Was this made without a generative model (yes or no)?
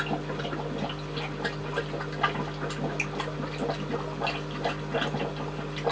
yes